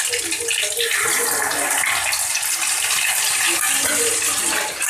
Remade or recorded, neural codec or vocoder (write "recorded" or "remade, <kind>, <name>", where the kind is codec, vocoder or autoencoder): recorded